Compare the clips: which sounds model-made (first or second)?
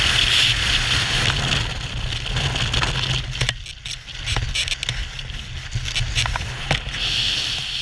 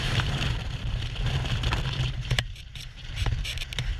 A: second